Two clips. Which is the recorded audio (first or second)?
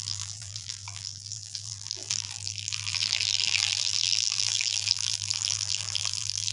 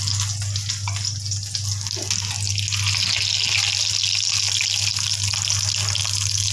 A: second